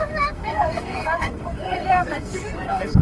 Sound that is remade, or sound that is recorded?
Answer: remade